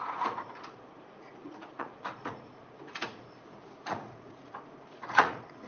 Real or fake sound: fake